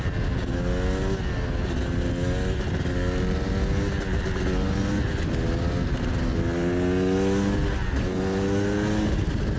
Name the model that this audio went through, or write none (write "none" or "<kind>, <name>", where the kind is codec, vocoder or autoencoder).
none